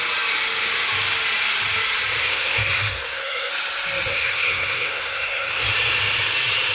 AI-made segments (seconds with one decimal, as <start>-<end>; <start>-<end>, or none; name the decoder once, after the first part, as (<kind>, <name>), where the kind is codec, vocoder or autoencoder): 2.2-3.5 (codec, SNAC); 4.1-5.7